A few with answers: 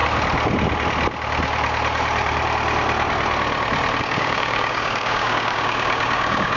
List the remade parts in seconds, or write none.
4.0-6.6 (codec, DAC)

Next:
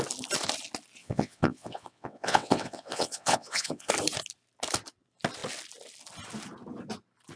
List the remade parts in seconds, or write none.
1.0-3.9 (vocoder, WaveNeXt)

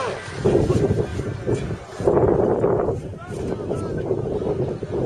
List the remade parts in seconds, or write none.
none

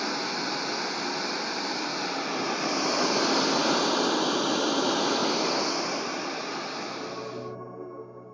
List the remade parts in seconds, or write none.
none

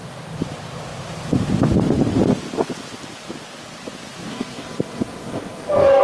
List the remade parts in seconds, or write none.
4.3-6.0 (codec, DAC)